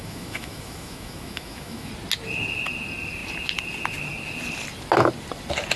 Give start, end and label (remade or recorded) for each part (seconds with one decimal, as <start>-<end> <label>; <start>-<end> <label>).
0.0-1.9 remade; 1.9-5.8 recorded

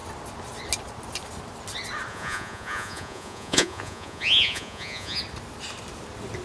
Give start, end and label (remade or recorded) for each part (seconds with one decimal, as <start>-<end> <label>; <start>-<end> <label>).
0.0-2.1 recorded; 2.1-5.2 remade; 5.2-6.4 recorded